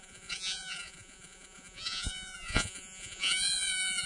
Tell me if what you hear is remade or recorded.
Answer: remade